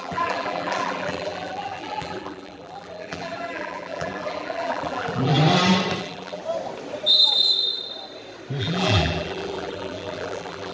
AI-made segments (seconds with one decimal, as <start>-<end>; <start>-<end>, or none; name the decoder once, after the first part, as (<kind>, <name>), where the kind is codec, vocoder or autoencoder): 0.0-5.3 (vocoder, BigVGAN v2); 6.0-6.4; 8.6-10.7